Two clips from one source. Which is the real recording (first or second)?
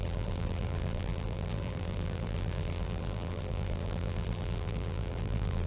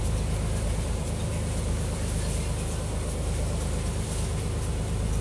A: second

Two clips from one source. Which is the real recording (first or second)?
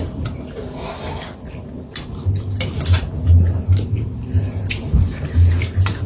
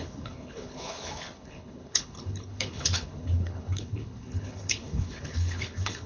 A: first